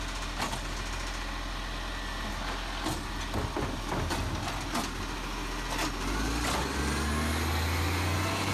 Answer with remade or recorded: recorded